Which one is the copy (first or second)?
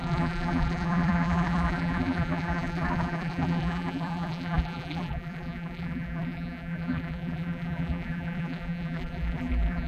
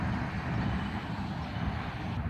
first